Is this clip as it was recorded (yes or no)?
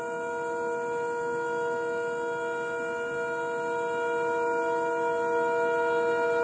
yes